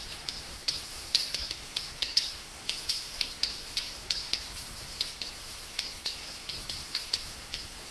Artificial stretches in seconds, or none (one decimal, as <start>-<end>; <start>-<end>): 0.0-7.9